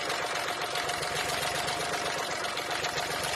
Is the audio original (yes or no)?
yes